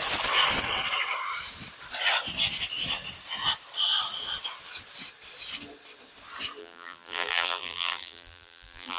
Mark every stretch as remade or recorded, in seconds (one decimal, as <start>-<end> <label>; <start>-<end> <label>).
0.0-6.6 recorded; 6.6-9.0 remade